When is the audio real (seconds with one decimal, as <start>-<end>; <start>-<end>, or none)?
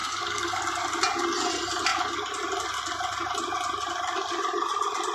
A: 0.6-5.1